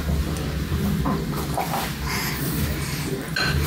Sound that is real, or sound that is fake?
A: real